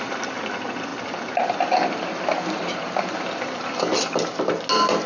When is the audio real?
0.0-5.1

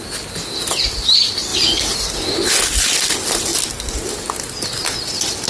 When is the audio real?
0.0-5.5

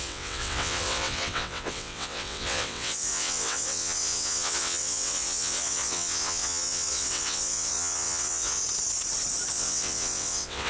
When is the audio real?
8.6-9.5